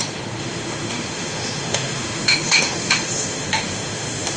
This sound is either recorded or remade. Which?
remade